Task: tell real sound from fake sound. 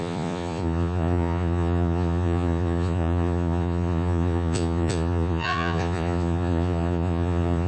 fake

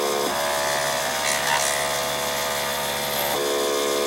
real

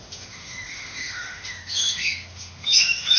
fake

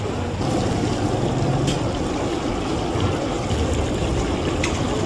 real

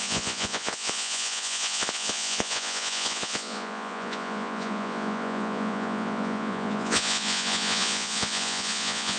fake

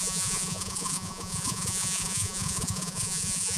fake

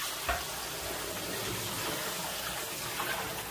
real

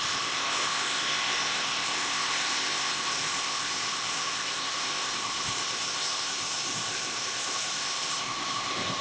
fake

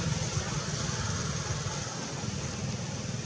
real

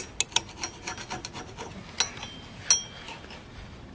real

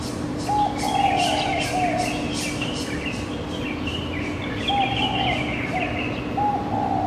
real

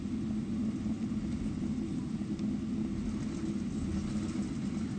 real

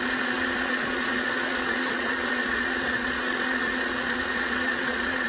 fake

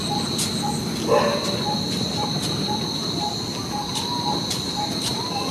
real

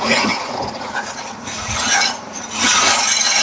fake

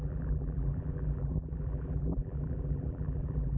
fake